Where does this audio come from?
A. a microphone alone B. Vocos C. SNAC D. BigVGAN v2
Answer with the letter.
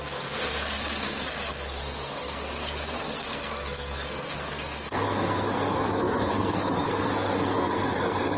C